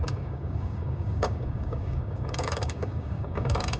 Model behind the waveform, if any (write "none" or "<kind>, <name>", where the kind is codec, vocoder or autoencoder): codec, DAC